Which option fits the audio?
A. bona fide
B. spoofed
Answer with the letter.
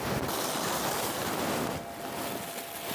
A